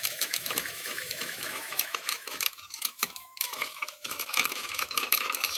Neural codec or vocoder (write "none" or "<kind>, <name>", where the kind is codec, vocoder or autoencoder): autoencoder, DAC-VAE